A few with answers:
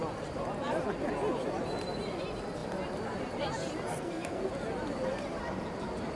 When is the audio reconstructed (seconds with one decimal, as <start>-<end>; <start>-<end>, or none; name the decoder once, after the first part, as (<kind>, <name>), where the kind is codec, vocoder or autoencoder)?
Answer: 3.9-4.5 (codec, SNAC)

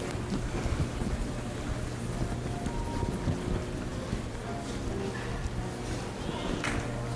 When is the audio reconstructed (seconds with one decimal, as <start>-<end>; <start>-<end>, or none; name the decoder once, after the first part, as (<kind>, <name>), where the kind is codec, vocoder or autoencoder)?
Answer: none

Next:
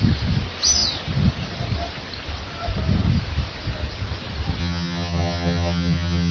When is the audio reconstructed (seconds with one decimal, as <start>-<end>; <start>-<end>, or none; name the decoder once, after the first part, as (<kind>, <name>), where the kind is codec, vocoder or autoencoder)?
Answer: 4.6-6.3 (vocoder, HiFi-GAN)

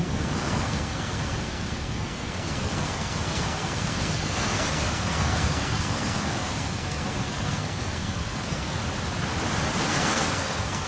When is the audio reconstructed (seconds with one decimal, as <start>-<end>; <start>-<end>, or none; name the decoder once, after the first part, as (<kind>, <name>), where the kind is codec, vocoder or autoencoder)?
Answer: 0.0-8.8 (codec, SNAC); 9.9-10.9